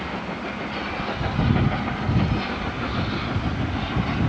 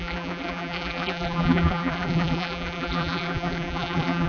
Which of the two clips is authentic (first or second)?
first